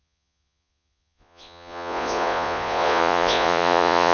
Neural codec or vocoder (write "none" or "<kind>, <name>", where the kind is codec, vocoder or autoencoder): vocoder, Vocos